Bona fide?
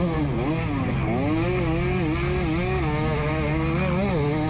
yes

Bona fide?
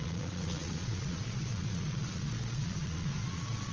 no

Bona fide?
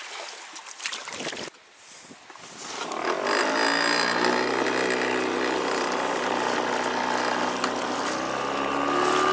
yes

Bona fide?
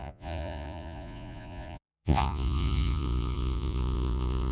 no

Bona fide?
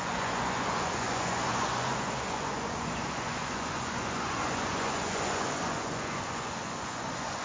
no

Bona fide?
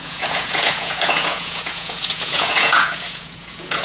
no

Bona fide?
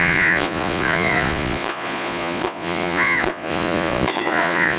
no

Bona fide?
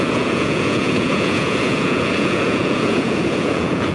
no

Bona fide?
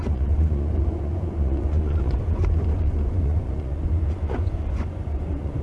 no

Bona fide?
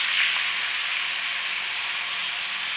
yes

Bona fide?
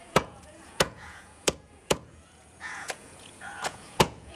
no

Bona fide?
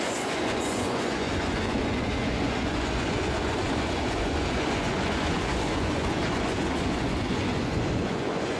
no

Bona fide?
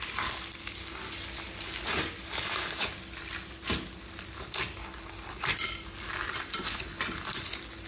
yes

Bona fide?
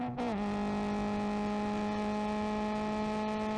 yes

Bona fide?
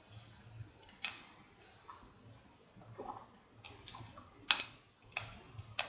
yes